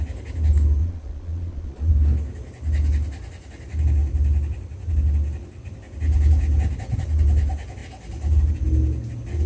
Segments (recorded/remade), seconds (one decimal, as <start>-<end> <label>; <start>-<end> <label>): 0.0-0.8 recorded; 0.8-1.9 remade; 1.9-9.5 recorded